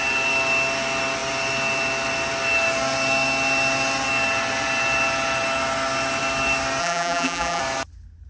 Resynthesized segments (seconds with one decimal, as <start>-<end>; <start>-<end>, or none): 6.8-7.6